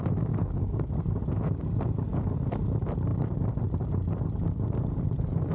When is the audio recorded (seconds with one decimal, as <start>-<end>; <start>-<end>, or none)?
0.0-5.5